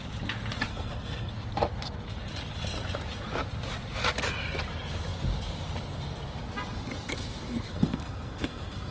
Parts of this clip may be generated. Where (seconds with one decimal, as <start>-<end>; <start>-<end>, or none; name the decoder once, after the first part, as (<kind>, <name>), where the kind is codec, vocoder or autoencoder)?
0.7-1.3 (codec, SNAC); 7.7-8.9